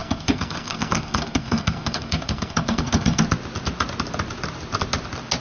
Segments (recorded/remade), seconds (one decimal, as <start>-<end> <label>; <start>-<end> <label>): 0.0-3.2 remade; 3.2-5.4 recorded